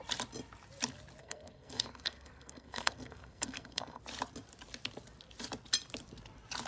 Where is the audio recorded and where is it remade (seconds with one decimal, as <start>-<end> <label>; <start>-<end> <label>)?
0.0-1.2 recorded; 1.2-4.0 remade; 4.0-6.7 recorded

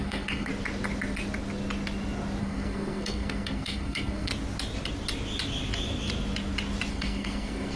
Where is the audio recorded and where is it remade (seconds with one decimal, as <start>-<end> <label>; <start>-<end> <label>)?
0.0-0.5 remade; 0.5-2.4 recorded; 2.4-4.3 remade; 4.3-6.9 recorded; 6.9-7.8 remade

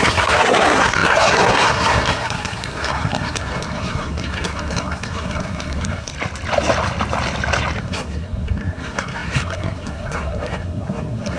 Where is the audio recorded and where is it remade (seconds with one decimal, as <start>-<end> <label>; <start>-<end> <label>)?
0.0-6.1 remade; 6.1-7.8 recorded; 7.8-11.4 remade

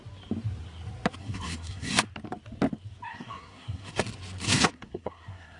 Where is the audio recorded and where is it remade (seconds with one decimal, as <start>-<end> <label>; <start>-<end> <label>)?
0.0-1.2 recorded; 1.2-2.0 remade; 2.0-3.1 recorded; 3.1-4.0 remade; 4.0-4.4 recorded; 4.4-5.6 remade

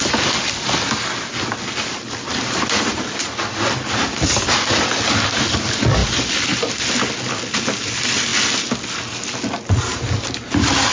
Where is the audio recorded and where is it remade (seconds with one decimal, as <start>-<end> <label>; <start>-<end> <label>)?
0.0-10.9 recorded